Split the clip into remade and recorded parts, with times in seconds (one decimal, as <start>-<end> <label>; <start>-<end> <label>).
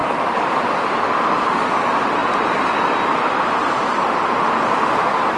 0.0-5.4 recorded